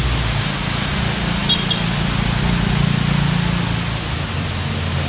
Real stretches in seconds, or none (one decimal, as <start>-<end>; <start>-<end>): 0.0-5.1